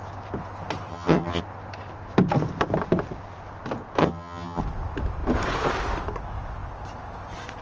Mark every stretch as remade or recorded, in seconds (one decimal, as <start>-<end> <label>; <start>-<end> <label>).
0.0-0.9 recorded; 0.9-1.4 remade; 1.4-4.0 recorded; 4.0-4.6 remade; 4.6-7.6 recorded